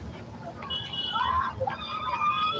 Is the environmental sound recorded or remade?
recorded